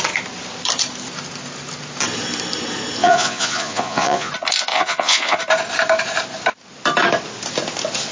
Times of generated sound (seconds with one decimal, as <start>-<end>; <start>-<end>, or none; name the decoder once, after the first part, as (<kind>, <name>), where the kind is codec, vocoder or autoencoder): 3.0-4.3 (vocoder, Vocos); 4.7-5.4